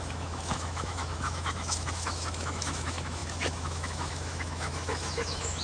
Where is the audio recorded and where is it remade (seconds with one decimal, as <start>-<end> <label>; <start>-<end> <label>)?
0.0-5.6 remade